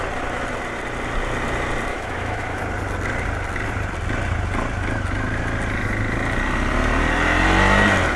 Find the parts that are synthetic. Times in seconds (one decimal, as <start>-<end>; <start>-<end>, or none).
1.9-2.6